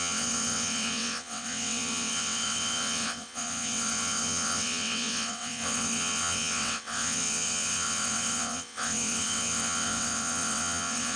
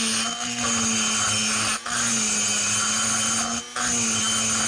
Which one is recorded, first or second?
second